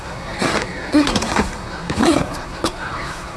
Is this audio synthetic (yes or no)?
yes